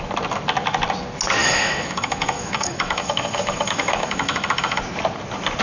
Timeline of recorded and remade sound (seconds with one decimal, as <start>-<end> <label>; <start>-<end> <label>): 0.0-1.4 recorded; 1.4-4.8 remade; 4.8-5.6 recorded